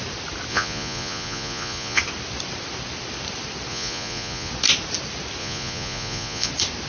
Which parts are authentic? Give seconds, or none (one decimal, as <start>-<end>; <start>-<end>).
0.0-0.5; 2.0-3.7; 4.5-5.4; 6.5-6.9